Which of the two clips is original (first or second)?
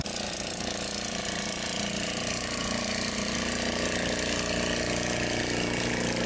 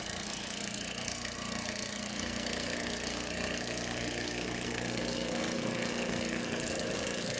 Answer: first